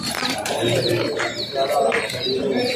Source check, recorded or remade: recorded